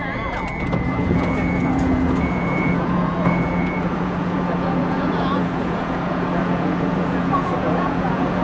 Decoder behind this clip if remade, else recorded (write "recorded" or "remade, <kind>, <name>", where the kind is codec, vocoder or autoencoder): remade, vocoder, Vocos